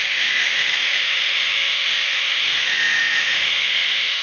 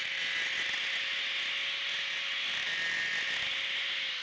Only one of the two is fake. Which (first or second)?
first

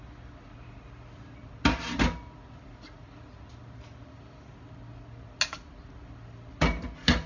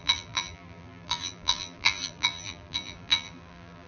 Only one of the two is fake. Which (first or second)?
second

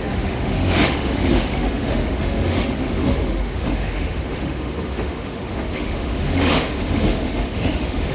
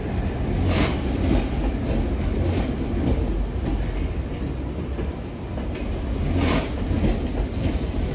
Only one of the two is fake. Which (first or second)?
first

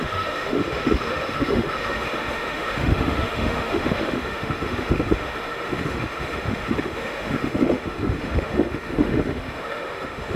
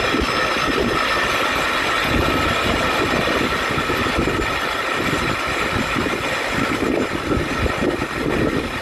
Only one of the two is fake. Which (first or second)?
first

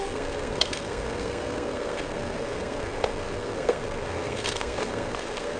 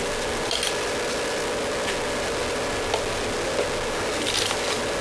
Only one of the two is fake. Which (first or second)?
first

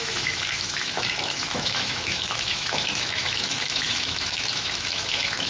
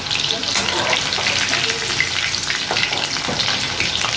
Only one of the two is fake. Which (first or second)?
first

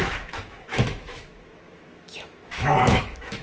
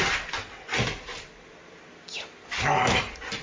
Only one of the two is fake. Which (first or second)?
first